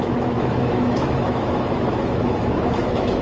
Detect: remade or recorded remade